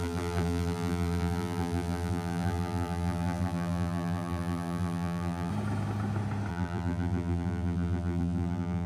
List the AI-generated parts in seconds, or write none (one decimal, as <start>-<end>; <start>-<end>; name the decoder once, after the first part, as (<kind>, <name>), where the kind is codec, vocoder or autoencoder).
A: 0.0-5.5 (vocoder, BigVGAN v2); 6.5-8.9